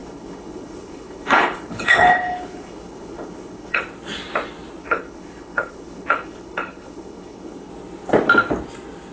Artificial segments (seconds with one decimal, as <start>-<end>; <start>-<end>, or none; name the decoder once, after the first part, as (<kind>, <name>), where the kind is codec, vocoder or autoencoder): 0.0-3.8 (codec, HILCodec); 4.8-7.7